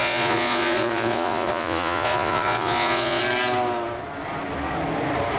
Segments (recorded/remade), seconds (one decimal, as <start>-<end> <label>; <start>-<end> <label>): 0.0-3.2 remade; 3.2-5.4 recorded

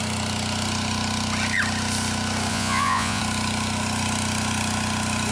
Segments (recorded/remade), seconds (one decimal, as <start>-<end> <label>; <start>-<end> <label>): 0.0-2.5 recorded; 2.5-3.2 remade; 3.2-5.3 recorded

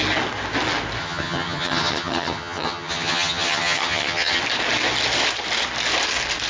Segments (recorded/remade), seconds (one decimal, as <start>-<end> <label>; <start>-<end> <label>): 0.0-1.0 recorded; 1.0-4.4 remade; 4.4-6.5 recorded

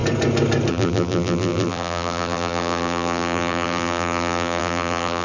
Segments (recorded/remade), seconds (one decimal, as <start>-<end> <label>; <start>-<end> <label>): 0.0-0.7 recorded; 0.7-5.2 remade

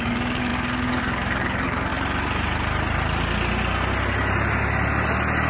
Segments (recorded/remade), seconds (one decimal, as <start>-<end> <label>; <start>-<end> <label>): 0.0-1.9 remade; 1.9-5.5 recorded

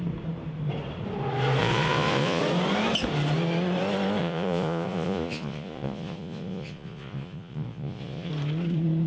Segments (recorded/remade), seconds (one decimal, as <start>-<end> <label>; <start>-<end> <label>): 0.0-1.6 recorded; 1.6-2.4 remade; 2.4-4.2 recorded; 4.2-8.3 remade; 8.3-9.1 recorded

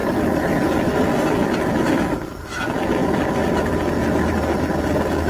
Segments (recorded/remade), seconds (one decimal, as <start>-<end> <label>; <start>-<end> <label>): 0.0-5.3 recorded

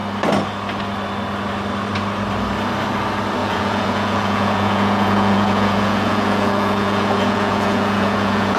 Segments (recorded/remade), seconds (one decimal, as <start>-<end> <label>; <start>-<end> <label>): 0.0-3.4 recorded; 3.4-8.6 remade